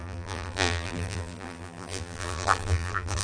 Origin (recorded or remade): remade